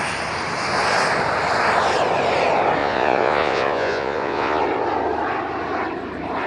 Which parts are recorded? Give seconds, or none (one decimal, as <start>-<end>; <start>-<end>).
0.0-2.8; 4.6-6.5